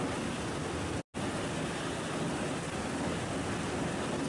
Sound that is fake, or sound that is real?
real